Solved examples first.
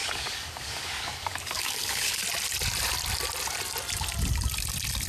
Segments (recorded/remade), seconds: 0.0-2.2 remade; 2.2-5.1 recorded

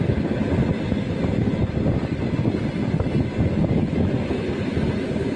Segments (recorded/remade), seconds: 0.0-1.0 recorded; 1.0-1.8 remade; 1.8-5.4 recorded

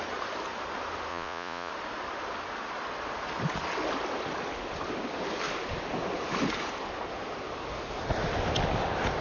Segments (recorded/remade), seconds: 0.0-1.1 recorded; 1.1-1.7 remade; 1.7-9.2 recorded